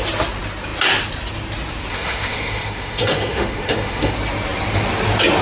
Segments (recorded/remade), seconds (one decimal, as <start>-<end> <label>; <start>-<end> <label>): 0.0-1.9 recorded; 1.9-4.1 remade; 4.1-5.4 recorded